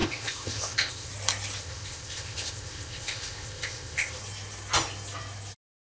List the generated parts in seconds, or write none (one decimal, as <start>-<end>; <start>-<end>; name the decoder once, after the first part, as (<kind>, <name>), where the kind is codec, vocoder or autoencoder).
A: 0.0-1.1 (codec, ZipCodec); 1.6-4.2